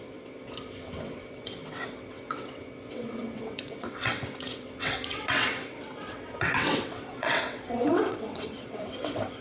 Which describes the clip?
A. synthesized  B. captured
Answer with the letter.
A